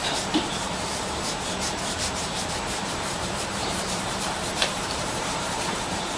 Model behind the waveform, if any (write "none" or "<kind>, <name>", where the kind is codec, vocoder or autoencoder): vocoder, BigVGAN v2